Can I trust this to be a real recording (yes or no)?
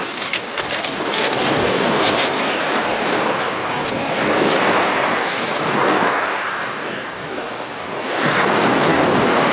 no